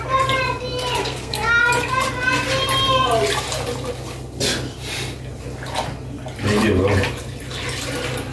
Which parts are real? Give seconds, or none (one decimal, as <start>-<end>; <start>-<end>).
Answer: 0.0-1.0; 1.6-8.3

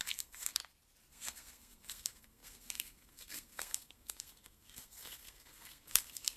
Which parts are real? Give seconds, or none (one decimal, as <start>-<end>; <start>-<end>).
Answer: 0.6-1.1

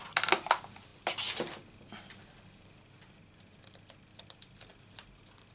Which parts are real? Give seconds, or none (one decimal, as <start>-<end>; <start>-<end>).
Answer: 0.0-5.5